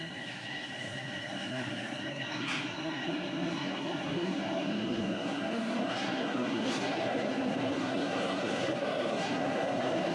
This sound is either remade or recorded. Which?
remade